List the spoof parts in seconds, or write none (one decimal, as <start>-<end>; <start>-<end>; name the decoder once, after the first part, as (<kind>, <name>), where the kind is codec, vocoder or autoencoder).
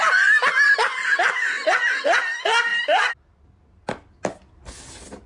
none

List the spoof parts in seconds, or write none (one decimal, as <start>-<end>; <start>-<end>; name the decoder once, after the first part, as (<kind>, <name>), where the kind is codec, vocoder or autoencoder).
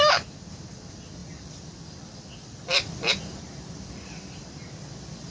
1.2-4.4 (vocoder, BigVGAN v2)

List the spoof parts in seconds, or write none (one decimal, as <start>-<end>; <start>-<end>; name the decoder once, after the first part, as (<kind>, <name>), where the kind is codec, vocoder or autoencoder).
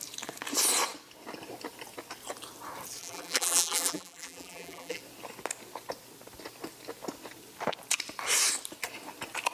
3.0-5.0 (vocoder, BigVGAN v2)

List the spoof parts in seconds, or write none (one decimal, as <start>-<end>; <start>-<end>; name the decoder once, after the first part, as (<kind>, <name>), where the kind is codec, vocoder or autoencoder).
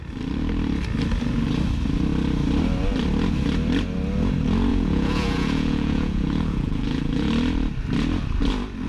4.7-7.3 (vocoder, Vocos)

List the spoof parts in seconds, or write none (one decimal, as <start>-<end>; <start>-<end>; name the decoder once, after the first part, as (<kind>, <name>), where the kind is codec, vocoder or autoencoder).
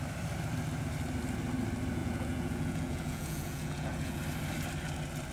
2.0-4.2 (vocoder, Vocos)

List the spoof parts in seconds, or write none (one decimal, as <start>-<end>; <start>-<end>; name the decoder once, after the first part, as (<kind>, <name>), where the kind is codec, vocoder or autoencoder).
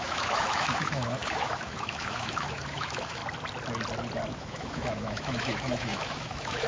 0.0-3.2 (autoencoder, DAC-VAE); 4.3-6.7